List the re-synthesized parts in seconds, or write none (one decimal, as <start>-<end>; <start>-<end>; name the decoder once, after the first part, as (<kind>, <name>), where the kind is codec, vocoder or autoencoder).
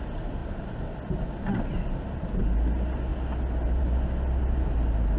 none